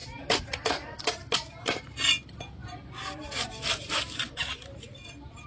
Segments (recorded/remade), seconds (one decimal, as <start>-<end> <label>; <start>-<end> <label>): 0.0-5.5 recorded